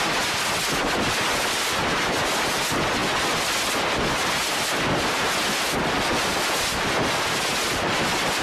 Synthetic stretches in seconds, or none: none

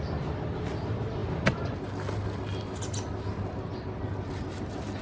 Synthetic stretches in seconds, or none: none